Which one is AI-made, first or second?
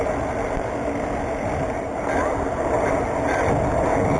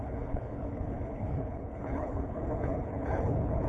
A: second